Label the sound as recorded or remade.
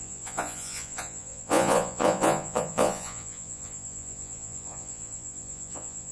remade